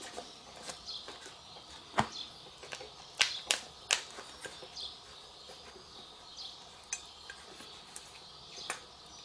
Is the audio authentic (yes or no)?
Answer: yes